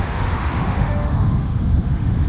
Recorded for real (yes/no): no